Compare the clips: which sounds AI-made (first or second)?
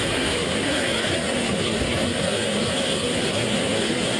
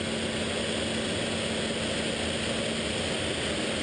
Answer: first